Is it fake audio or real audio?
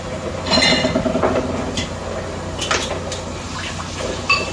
real